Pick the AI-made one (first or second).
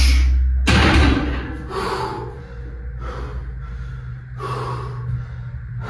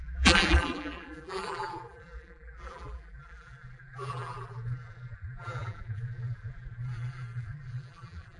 second